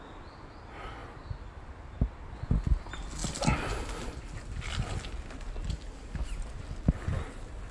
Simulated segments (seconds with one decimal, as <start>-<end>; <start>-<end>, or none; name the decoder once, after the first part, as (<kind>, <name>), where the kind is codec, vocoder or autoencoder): none

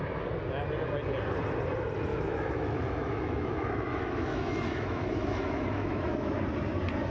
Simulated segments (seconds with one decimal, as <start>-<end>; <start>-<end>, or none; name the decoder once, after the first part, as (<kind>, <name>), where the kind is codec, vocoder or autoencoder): 2.1-6.4 (autoencoder, DAC-VAE)

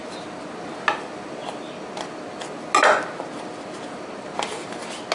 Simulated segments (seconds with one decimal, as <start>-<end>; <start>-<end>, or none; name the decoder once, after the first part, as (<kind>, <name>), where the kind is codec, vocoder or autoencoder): none

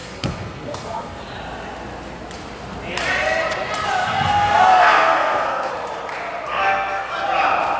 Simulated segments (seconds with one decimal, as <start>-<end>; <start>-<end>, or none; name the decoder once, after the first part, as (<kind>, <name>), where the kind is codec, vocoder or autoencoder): 0.0-1.2 (codec, SNAC); 4.0-5.7; 6.5-7.1

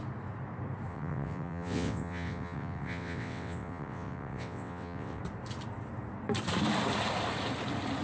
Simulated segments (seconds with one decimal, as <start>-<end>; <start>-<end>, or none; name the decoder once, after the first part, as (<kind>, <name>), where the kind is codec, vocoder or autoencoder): 0.9-5.2 (vocoder, WaveNeXt)

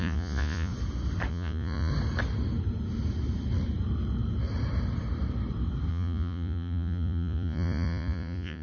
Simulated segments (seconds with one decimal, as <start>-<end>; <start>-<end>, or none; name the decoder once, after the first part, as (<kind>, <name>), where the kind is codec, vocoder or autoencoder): 0.0-0.7 (vocoder, Vocos); 1.3-1.9; 5.9-8.6